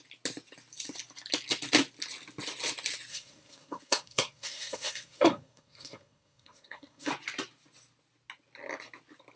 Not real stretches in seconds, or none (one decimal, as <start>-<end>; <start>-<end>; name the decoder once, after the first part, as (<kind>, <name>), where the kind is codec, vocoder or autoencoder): 3.1-7.1 (codec, SNAC)